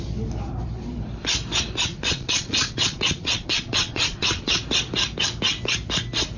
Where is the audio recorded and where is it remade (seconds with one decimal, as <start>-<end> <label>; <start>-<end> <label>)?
0.0-1.9 recorded; 1.9-4.6 remade; 4.6-6.4 recorded

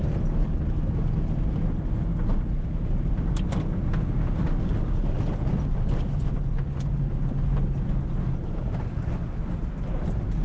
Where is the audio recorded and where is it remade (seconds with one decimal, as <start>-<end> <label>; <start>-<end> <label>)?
0.0-10.4 recorded

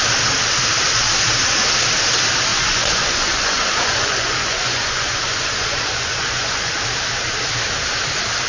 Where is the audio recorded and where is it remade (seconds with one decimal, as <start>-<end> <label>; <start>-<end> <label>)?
0.0-2.5 recorded; 2.5-6.7 remade; 6.7-8.5 recorded

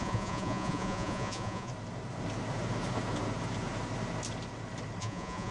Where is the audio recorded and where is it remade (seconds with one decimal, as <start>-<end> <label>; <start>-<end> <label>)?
0.0-1.7 remade; 1.7-5.0 recorded; 5.0-5.5 remade